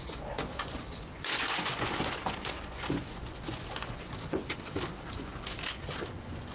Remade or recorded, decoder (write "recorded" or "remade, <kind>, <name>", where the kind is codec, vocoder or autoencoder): remade, vocoder, Vocos